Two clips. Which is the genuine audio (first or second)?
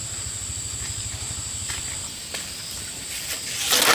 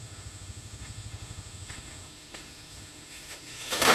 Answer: first